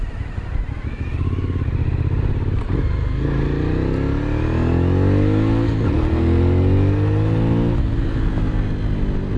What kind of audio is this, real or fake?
real